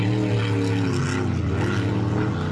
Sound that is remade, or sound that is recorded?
recorded